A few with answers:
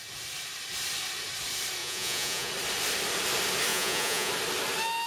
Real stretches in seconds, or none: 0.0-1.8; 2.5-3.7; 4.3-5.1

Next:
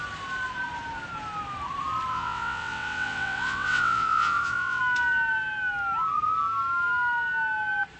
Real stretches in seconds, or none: 0.0-2.1; 4.8-8.0

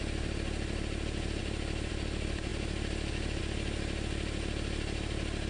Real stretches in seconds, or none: 0.0-5.5